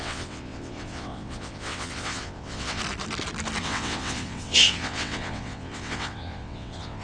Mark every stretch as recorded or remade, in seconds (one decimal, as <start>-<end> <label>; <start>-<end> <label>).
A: 0.0-2.8 remade; 2.8-3.6 recorded; 3.6-7.0 remade